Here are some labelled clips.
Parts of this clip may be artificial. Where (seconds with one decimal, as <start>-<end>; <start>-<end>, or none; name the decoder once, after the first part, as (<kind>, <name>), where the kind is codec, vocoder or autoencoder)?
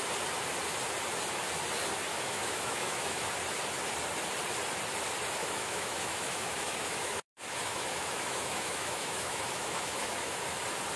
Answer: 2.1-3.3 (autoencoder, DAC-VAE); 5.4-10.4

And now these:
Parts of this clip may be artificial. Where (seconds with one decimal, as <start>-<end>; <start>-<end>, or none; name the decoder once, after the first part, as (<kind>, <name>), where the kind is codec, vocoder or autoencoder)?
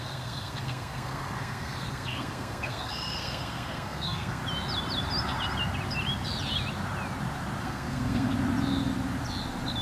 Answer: 0.0-4.4 (codec, SNAC); 7.6-8.3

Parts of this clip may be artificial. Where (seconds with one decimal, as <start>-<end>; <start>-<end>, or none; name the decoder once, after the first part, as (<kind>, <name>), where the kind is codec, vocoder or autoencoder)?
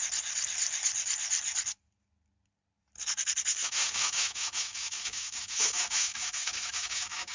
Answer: 3.5-7.3 (autoencoder, DAC-VAE)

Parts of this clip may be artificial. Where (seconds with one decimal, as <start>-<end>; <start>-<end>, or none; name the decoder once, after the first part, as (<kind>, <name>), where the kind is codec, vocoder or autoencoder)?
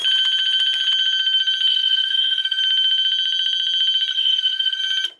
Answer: 1.7-2.6 (codec, SNAC); 4.1-4.8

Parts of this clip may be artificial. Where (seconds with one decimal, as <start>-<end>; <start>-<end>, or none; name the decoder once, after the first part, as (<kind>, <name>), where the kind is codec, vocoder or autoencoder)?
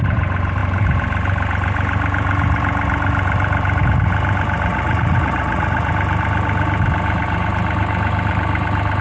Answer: 4.7-5.9 (vocoder, Vocos)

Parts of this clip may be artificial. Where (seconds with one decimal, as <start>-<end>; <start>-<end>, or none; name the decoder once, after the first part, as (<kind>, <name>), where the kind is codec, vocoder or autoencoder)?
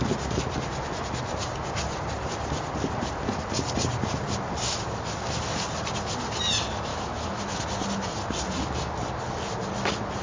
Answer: 6.9-7.6 (autoencoder, DAC-VAE)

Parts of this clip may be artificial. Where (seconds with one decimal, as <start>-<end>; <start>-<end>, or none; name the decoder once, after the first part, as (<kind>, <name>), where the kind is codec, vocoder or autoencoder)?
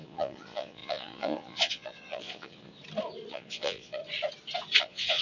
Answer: 0.0-2.7 (vocoder, Vocos); 3.3-4.0; 4.8-5.2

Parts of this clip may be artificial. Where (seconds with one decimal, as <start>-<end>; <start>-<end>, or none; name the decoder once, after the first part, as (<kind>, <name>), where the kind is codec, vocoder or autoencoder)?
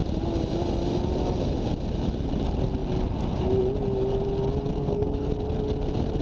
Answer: 4.7-5.3 (codec, SNAC)